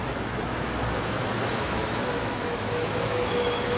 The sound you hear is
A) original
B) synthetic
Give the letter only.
B